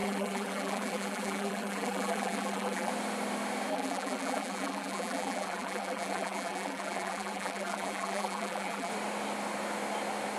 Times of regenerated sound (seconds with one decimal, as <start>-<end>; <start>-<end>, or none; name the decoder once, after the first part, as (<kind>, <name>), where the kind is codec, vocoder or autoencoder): 0.0-2.9 (vocoder, BigVGAN v2); 3.7-8.9